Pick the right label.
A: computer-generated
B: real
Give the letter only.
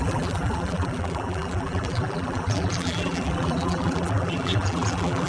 A